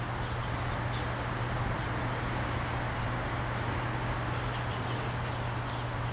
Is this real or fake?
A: real